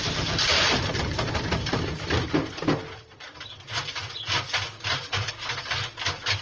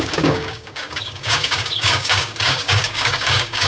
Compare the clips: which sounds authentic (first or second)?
first